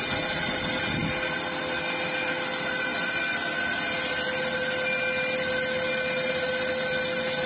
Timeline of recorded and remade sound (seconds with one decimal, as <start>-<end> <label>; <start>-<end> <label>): 0.0-7.5 recorded